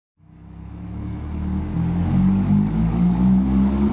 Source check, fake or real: fake